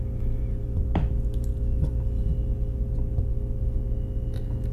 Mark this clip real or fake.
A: real